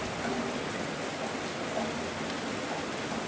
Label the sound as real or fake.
real